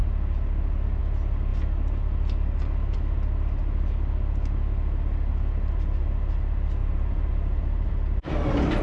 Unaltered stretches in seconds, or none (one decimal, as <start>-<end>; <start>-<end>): 0.0-6.8; 7.9-8.8